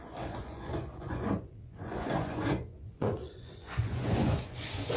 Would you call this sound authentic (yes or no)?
no